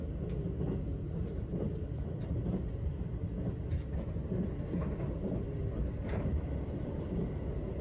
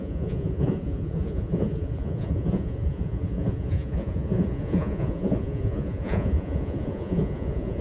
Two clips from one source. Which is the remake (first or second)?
second